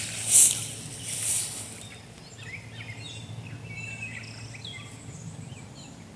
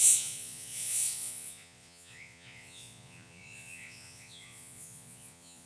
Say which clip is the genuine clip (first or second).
first